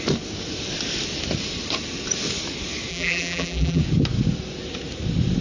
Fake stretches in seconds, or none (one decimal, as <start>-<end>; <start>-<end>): 2.9-3.8